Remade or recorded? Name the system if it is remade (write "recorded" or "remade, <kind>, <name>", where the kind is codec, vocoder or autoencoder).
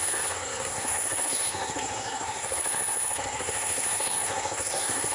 remade, codec, SNAC